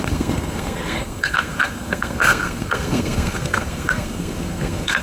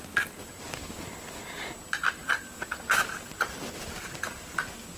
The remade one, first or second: first